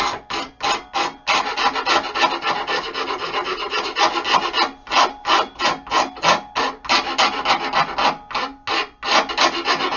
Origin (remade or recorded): recorded